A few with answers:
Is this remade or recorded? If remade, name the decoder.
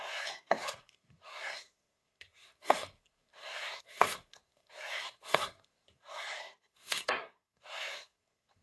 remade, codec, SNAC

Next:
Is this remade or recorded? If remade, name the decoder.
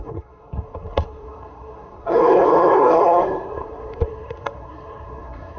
remade, codec, SNAC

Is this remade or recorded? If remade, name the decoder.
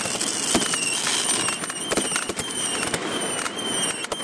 recorded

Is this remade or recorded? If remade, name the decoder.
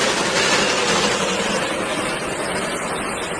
recorded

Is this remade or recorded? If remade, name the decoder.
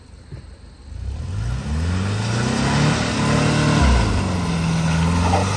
recorded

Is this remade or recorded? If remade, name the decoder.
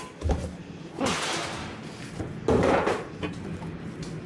recorded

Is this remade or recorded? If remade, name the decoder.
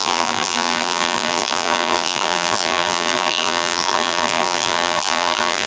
remade, vocoder, BigVGAN v2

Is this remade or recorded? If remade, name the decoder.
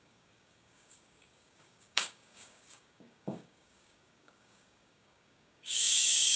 remade, codec, DAC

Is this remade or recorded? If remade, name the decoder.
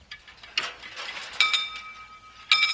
recorded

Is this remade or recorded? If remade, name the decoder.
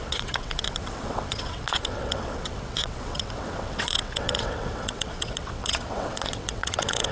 remade, vocoder, WaveNeXt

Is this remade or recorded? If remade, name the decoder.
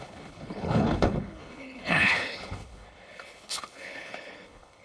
remade, codec, HILCodec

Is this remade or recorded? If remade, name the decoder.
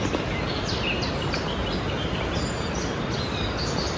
recorded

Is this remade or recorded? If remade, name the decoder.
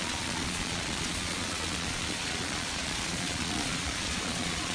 remade, vocoder, Vocos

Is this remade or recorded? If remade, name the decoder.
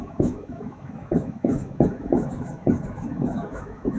remade, autoencoder, DAC-VAE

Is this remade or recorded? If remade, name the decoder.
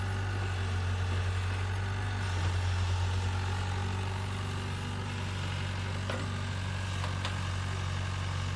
recorded